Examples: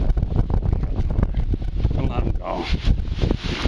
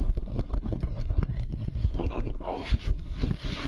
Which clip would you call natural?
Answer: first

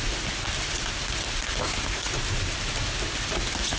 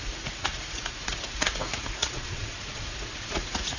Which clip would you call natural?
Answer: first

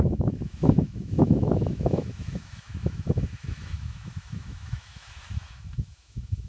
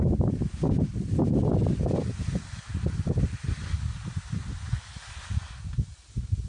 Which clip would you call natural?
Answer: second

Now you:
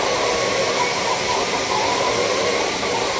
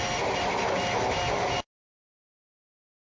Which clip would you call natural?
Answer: second